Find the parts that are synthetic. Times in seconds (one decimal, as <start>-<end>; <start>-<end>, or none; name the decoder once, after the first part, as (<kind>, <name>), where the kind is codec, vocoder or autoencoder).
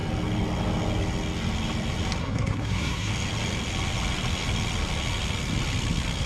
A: 2.2-3.1 (codec, SNAC)